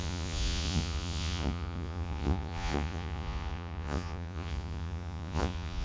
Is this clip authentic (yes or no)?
no